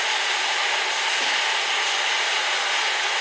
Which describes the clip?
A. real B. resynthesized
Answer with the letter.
A